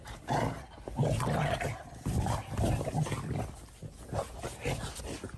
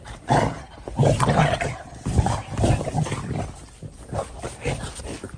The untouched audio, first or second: first